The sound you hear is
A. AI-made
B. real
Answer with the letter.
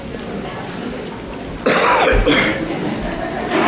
A